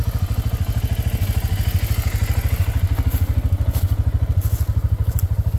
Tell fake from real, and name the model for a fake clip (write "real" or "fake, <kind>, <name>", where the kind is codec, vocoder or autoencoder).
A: real